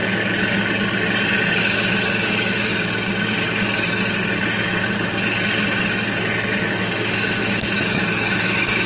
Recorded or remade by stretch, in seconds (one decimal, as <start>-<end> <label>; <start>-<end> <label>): 0.0-1.5 recorded; 1.5-2.7 remade; 2.7-6.8 recorded; 6.8-8.9 remade